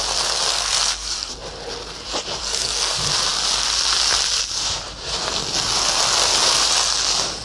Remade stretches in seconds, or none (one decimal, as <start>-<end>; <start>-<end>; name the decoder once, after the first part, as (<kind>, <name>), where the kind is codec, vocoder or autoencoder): 0.5-1.3 (codec, SNAC); 2.4-2.9